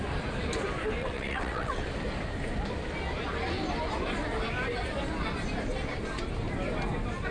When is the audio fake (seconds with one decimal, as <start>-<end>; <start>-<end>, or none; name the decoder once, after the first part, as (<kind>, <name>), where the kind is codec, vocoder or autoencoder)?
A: 1.0-1.8 (vocoder, WaveNeXt)